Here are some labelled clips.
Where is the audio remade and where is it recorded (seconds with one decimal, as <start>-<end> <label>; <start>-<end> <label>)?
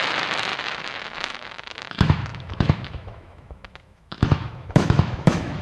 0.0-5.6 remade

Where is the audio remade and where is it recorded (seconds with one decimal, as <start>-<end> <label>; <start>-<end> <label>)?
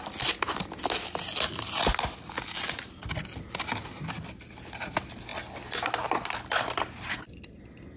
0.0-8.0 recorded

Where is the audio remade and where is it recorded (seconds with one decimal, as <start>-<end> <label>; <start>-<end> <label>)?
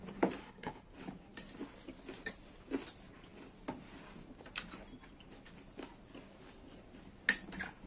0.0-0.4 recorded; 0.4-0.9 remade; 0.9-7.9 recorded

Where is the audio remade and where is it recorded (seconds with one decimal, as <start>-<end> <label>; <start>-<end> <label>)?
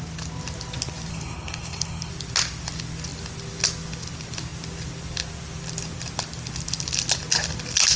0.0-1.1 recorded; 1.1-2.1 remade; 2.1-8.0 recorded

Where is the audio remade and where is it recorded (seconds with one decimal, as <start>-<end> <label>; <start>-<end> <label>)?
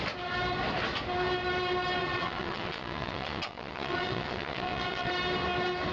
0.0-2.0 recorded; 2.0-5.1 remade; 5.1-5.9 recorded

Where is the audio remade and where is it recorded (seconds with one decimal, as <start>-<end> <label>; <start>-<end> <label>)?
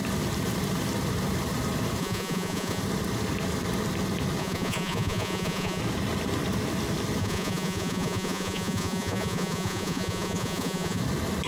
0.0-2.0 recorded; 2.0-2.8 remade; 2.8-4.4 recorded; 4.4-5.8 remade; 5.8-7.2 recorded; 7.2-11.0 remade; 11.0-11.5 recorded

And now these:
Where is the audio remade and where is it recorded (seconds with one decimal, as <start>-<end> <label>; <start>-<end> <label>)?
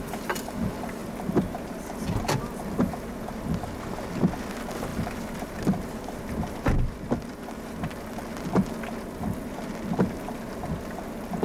0.0-11.4 recorded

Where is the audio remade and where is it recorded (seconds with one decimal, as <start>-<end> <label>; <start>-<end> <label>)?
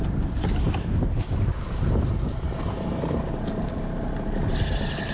0.0-5.1 recorded